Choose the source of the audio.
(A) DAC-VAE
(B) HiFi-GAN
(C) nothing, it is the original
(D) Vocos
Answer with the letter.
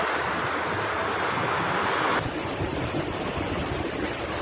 C